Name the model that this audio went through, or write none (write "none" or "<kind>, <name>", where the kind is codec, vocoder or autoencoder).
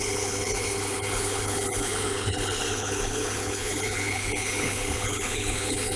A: codec, HILCodec